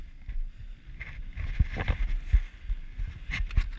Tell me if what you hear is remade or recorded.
recorded